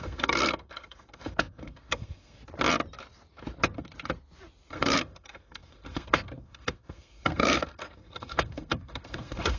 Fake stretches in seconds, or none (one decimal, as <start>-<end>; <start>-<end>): 0.0-2.4; 4.7-9.6